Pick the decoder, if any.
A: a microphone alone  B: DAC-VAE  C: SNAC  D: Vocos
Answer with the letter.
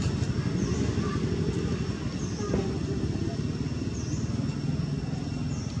A